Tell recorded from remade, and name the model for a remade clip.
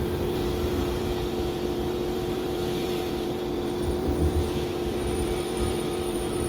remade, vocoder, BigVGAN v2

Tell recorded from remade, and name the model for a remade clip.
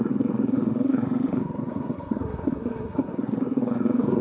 remade, codec, SNAC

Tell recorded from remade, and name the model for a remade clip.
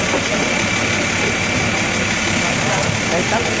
recorded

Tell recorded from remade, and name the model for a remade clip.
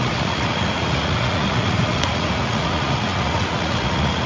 remade, vocoder, Vocos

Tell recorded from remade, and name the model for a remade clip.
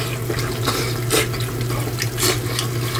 recorded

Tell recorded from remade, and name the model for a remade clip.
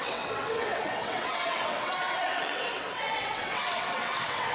remade, vocoder, WaveNeXt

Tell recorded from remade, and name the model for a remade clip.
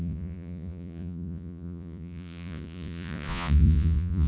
remade, vocoder, Vocos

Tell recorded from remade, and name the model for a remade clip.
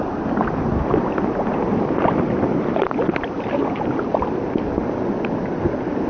recorded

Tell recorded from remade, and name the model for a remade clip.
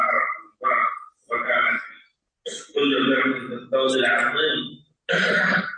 recorded